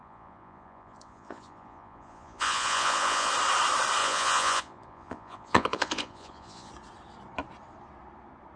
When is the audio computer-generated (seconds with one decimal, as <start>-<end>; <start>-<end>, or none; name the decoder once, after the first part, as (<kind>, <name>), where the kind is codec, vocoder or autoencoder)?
0.0-3.3 (vocoder, Vocos); 4.0-6.7